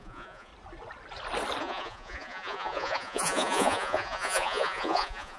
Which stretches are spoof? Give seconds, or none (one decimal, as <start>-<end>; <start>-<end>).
0.0-0.5; 1.6-5.4